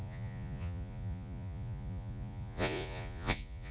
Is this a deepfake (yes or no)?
yes